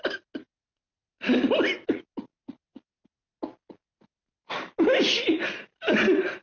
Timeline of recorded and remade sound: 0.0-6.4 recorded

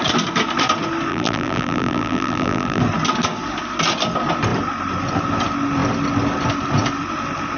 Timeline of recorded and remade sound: 0.0-1.1 recorded; 1.1-2.8 remade; 2.8-7.6 recorded

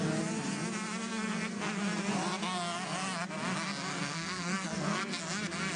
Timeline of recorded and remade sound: 0.0-1.1 recorded; 1.1-1.8 remade; 1.8-3.9 recorded; 3.9-5.2 remade; 5.2-5.8 recorded

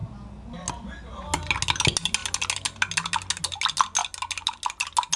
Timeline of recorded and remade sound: 0.0-5.2 recorded

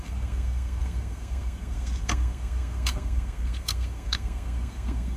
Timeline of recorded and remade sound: 0.0-5.2 remade

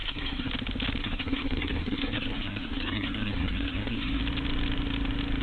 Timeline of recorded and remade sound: 0.0-0.5 remade; 0.5-1.0 recorded; 1.0-4.2 remade; 4.2-5.4 recorded